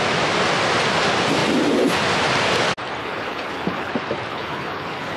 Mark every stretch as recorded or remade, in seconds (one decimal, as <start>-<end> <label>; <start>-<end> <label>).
0.0-3.0 recorded; 3.0-3.9 remade; 3.9-4.3 recorded; 4.3-5.2 remade